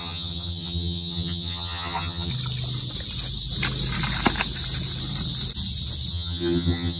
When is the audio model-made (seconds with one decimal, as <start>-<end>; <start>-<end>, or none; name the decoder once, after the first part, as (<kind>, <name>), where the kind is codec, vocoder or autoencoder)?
0.0-2.3 (vocoder, HiFi-GAN); 6.1-7.0